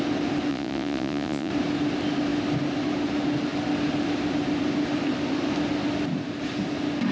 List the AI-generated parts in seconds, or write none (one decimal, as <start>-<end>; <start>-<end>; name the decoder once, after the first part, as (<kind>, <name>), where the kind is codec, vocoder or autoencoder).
0.5-1.5 (vocoder, Vocos)